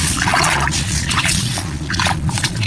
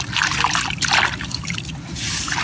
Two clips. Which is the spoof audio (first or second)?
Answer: first